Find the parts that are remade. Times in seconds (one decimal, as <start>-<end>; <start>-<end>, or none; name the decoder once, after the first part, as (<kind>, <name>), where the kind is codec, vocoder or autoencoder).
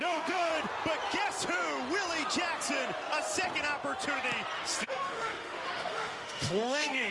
0.0-0.5 (autoencoder, DAC-VAE); 4.8-7.1